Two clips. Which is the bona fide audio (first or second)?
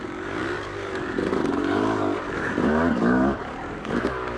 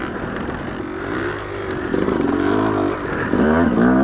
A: second